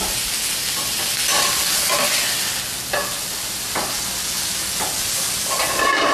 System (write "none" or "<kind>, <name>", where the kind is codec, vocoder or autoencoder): none